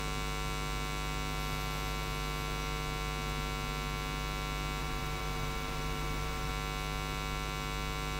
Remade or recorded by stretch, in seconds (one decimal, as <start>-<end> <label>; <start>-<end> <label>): 0.0-4.8 recorded; 4.8-6.5 remade; 6.5-8.2 recorded